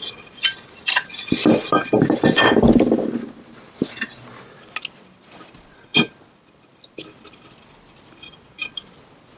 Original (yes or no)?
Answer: yes